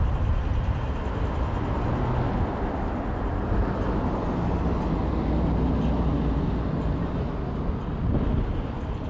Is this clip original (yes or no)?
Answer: yes